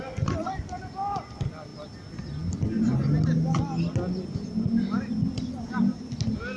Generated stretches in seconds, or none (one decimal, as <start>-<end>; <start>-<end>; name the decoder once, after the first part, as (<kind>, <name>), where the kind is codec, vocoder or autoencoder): none